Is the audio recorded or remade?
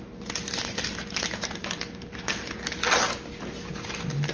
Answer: recorded